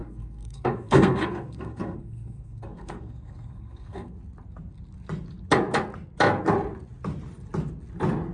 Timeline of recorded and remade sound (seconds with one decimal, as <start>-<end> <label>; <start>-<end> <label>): 0.0-4.1 remade; 4.1-8.3 recorded